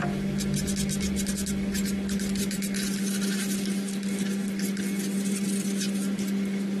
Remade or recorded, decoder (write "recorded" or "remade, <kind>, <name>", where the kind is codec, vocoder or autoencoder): recorded